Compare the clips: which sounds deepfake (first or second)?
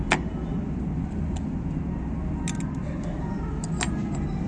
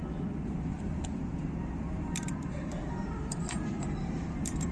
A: second